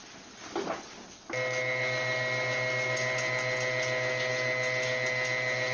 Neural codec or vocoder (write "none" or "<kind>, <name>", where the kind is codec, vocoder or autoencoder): none